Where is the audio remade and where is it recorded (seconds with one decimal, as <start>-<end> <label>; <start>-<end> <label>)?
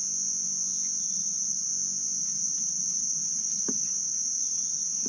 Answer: 0.0-1.0 remade; 1.0-1.7 recorded; 1.7-2.2 remade; 2.2-5.1 recorded